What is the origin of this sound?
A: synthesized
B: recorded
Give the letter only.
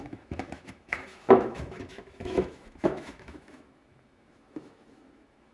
A